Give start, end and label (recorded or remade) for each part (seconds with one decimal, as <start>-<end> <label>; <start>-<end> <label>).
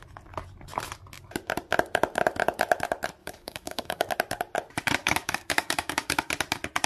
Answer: 0.0-3.2 recorded; 3.2-4.1 remade; 4.1-5.0 recorded; 5.0-6.3 remade; 6.3-6.9 recorded